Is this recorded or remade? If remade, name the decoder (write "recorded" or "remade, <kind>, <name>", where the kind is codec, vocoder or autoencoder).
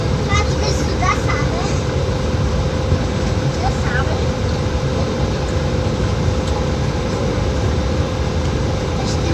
recorded